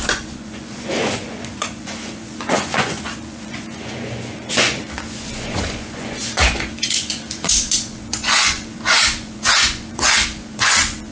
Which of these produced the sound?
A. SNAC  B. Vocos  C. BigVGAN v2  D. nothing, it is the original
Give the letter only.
B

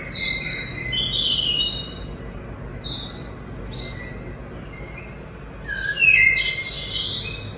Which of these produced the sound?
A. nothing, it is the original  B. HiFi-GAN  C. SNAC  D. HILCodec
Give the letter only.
A